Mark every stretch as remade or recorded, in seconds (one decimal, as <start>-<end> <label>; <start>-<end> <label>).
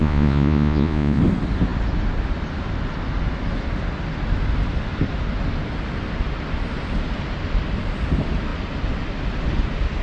0.0-1.2 remade; 1.2-10.0 recorded